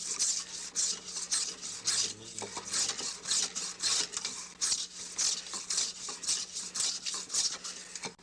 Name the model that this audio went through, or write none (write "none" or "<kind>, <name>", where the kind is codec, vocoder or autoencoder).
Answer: none